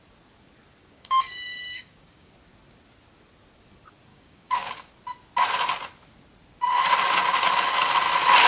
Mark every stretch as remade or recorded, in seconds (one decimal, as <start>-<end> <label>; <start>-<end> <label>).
0.0-0.8 recorded; 0.8-2.3 remade; 2.3-4.1 recorded; 4.1-4.9 remade; 4.9-8.5 recorded